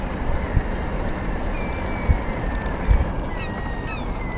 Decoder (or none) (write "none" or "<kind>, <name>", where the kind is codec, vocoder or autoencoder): none